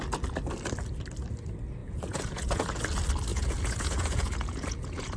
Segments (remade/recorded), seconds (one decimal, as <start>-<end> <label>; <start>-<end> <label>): 0.0-1.8 recorded; 1.8-2.8 remade; 2.8-3.3 recorded; 3.3-5.2 remade